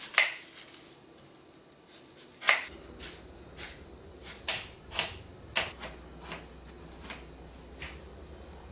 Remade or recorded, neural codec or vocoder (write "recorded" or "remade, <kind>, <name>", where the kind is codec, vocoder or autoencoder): recorded